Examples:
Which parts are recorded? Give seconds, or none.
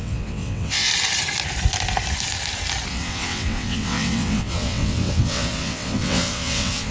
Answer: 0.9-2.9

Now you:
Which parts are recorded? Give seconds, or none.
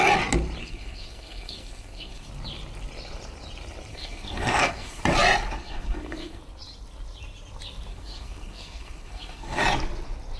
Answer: 0.0-0.6; 2.3-3.9; 5.0-5.6; 6.4-7.9; 9.6-10.4